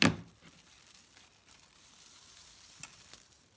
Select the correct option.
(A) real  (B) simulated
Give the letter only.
B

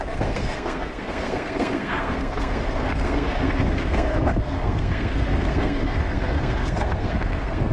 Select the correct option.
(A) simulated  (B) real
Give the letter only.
A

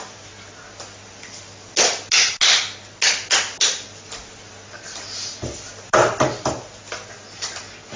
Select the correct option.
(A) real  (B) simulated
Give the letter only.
A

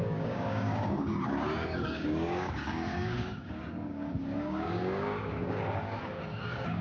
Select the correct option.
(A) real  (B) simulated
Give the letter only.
B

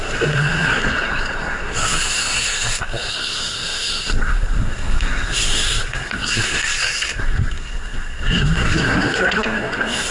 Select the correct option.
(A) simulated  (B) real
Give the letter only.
A